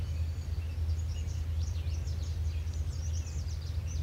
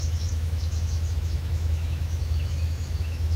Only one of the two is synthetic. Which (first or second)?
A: second